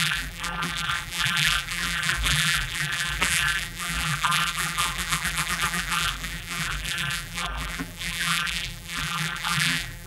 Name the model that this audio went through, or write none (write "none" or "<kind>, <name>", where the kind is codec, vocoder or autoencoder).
vocoder, BigVGAN v2